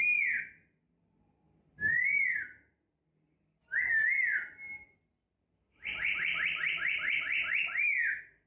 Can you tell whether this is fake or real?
real